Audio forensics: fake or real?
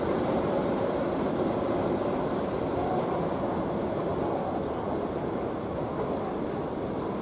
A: real